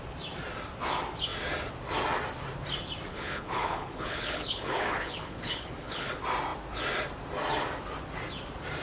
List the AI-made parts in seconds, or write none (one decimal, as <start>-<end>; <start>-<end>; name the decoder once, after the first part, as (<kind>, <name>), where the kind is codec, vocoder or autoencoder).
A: 3.1-6.1 (codec, HILCodec)